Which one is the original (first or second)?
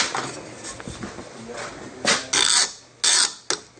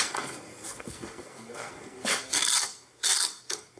first